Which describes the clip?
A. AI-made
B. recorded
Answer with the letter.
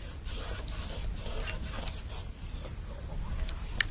B